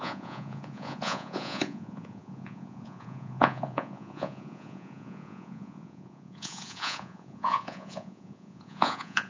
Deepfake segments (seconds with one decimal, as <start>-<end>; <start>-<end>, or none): 0.0-9.3